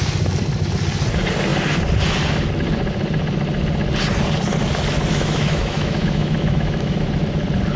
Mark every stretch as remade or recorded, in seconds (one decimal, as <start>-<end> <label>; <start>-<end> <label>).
0.0-5.1 recorded; 5.1-7.1 remade; 7.1-7.8 recorded